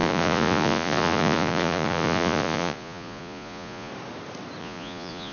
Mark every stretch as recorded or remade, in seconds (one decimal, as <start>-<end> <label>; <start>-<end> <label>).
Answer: 0.0-3.9 remade; 3.9-4.6 recorded; 4.6-5.3 remade

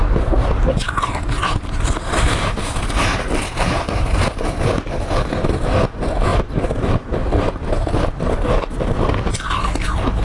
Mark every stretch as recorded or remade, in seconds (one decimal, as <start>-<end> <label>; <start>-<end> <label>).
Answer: 0.0-10.2 recorded

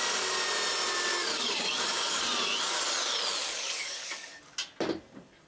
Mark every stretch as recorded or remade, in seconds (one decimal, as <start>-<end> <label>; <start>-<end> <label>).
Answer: 0.0-1.1 recorded; 1.1-2.2 remade; 2.2-3.4 recorded; 3.4-4.4 remade; 4.4-5.5 recorded

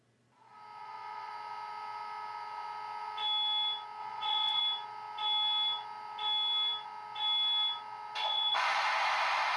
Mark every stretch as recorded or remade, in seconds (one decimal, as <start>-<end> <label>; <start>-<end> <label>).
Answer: 0.0-0.8 recorded; 0.8-1.3 remade; 1.3-4.0 recorded; 4.0-4.6 remade; 4.6-8.2 recorded; 8.2-8.8 remade; 8.8-9.6 recorded

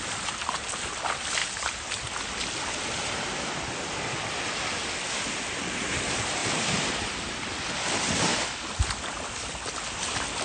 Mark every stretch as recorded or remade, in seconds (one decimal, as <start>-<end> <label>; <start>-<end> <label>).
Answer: 0.0-1.4 recorded; 1.4-2.0 remade; 2.0-6.4 recorded; 6.4-7.3 remade; 7.3-10.4 recorded

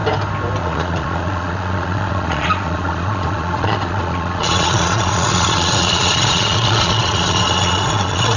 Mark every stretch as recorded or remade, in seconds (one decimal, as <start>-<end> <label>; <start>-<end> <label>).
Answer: 0.0-0.6 recorded; 0.6-8.4 remade

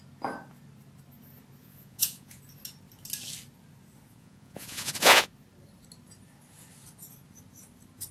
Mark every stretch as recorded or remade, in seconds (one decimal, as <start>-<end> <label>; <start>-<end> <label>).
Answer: 0.0-1.6 recorded; 1.6-2.4 remade; 2.4-4.1 recorded; 4.1-5.3 remade; 5.3-8.1 recorded

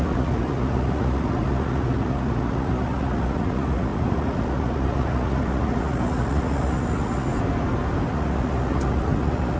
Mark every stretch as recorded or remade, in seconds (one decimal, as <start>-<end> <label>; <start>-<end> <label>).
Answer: 0.0-7.3 remade; 7.3-8.1 recorded; 8.1-9.6 remade